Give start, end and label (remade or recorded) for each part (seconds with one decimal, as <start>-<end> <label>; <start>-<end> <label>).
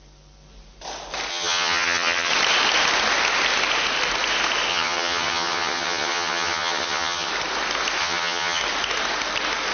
0.0-1.3 recorded; 1.3-2.3 remade; 2.3-4.7 recorded; 4.7-7.3 remade; 7.3-8.0 recorded; 8.0-8.6 remade; 8.6-9.7 recorded